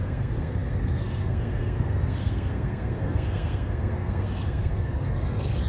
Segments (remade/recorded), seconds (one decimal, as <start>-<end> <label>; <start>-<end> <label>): 0.0-5.7 remade